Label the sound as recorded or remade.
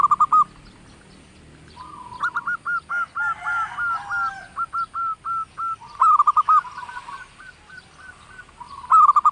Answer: recorded